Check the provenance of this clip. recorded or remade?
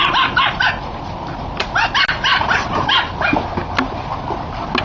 recorded